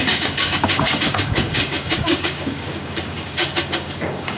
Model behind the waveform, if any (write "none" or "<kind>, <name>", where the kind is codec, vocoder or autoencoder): codec, DAC